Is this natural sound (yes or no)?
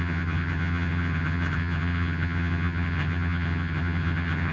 no